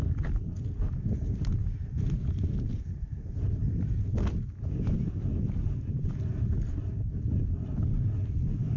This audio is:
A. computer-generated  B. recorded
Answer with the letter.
B